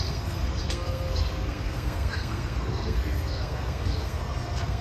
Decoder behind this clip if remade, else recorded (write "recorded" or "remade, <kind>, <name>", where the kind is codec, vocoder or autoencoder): remade, codec, SNAC